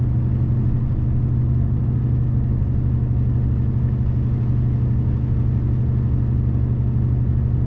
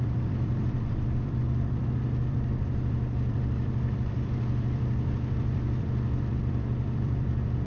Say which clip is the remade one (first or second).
second